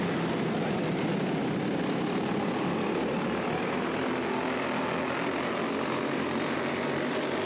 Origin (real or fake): real